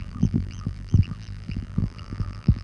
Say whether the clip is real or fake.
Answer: fake